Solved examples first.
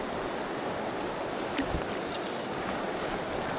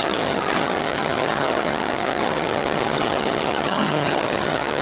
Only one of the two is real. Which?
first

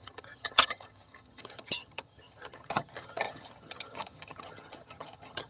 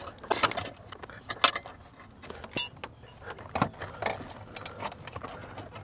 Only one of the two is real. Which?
second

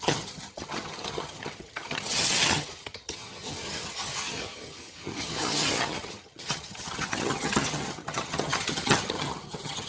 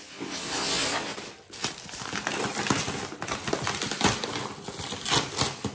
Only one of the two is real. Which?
second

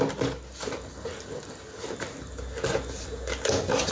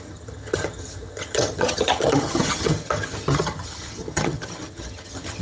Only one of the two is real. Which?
first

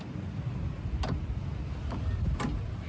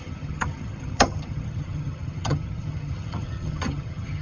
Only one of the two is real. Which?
first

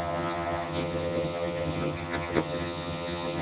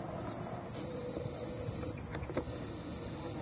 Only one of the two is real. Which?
second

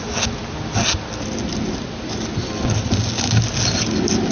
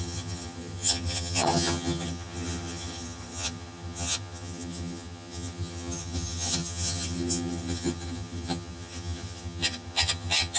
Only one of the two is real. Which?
first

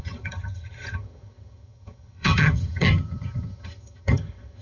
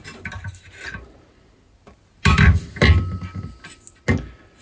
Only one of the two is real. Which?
second